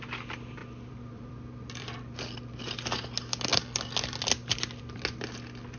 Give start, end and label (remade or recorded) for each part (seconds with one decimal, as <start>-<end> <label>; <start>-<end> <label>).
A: 0.0-0.6 recorded; 0.6-2.0 remade; 2.0-5.8 recorded